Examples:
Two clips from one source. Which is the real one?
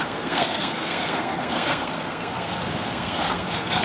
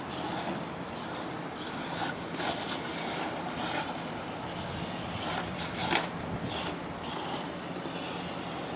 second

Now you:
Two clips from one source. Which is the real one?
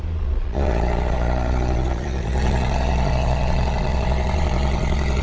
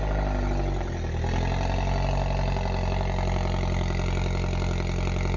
second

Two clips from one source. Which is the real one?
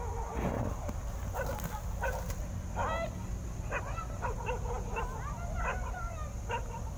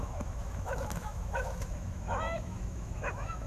first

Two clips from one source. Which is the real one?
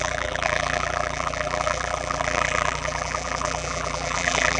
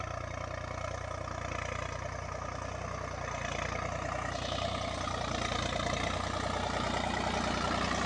second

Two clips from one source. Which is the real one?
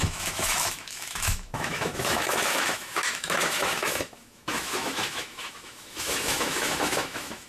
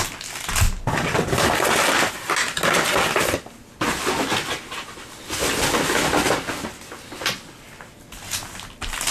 second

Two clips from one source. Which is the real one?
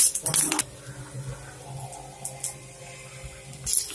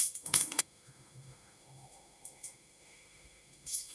first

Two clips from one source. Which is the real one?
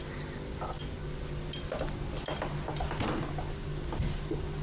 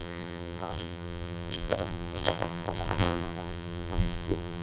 first